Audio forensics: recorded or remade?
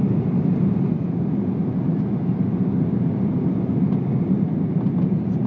recorded